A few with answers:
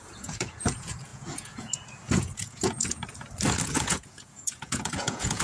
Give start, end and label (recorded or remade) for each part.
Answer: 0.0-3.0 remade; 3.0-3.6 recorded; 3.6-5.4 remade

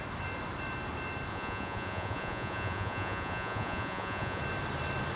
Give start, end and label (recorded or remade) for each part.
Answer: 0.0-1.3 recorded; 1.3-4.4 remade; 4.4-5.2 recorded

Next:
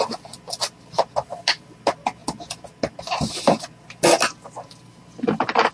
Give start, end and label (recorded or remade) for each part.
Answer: 0.0-5.7 recorded

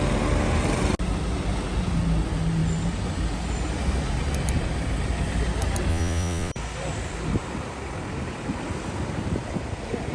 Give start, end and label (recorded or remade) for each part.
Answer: 0.0-5.9 recorded; 5.9-6.5 remade; 6.5-10.1 recorded